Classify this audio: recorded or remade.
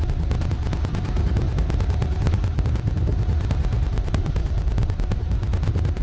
recorded